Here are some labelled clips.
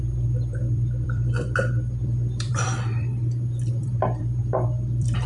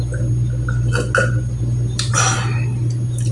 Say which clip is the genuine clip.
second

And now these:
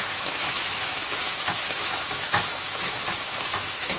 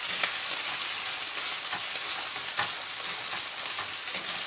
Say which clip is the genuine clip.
second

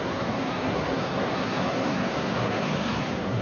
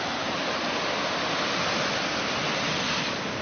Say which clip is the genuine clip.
second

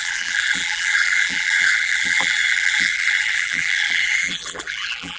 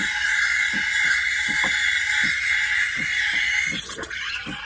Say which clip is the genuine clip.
second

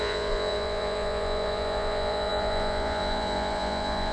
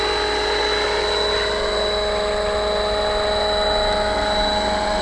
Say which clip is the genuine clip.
second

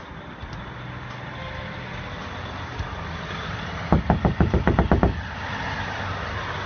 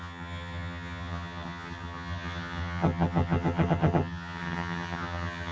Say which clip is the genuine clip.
first